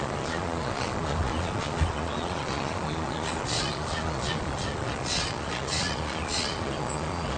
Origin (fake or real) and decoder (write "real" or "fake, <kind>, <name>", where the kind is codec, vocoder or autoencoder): fake, vocoder, Vocos